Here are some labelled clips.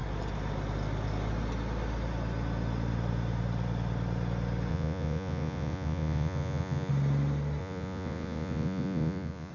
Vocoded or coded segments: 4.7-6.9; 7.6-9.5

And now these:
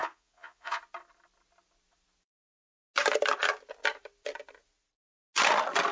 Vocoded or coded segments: 0.0-0.8

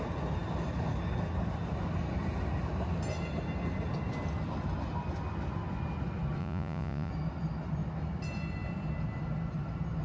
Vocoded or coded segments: 6.4-7.1

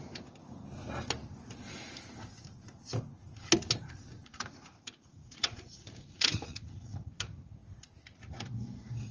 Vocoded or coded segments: 4.2-7.1

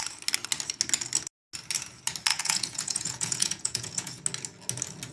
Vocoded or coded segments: 2.3-4.2

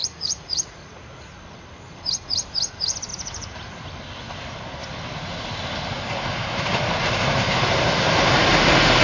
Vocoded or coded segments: 0.0-1.3; 3.1-3.8